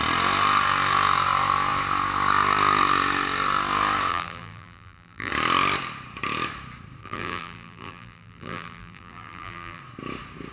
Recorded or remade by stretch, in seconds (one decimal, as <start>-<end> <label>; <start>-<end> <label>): 0.0-4.1 recorded; 4.1-5.3 remade; 5.3-7.0 recorded; 7.0-9.8 remade; 9.8-10.5 recorded